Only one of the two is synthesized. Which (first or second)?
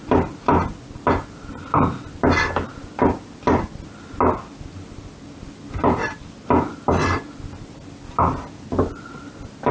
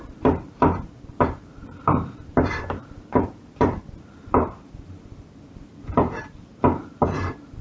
second